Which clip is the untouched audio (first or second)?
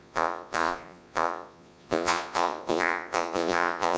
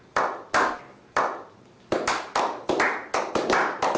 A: second